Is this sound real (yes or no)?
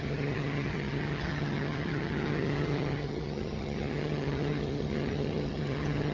no